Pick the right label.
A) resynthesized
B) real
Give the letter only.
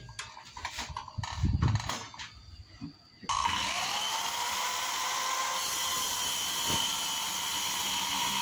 B